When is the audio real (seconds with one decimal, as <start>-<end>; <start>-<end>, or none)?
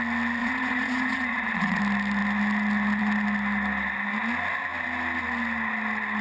0.0-0.4; 1.8-6.2